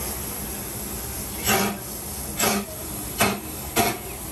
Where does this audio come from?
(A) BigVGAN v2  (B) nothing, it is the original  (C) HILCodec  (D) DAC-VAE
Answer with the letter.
B